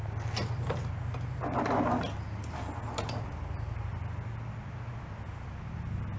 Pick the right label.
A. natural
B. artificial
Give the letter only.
A